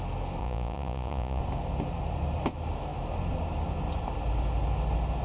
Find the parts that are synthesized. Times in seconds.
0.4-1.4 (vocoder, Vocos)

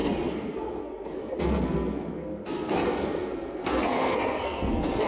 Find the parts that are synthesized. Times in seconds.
0.0-5.1 (codec, SNAC)

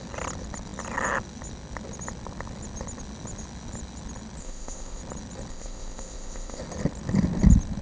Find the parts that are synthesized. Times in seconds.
4.4-5.0 (codec, ZipCodec); 5.5-6.6